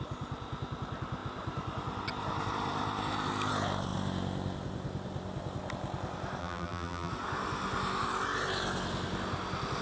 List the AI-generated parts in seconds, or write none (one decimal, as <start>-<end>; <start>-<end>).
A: 6.4-7.1